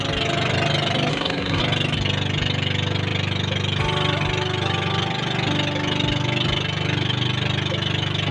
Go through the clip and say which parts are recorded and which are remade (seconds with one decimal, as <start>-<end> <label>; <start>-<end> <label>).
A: 0.0-1.1 recorded; 1.1-1.6 remade; 1.6-8.3 recorded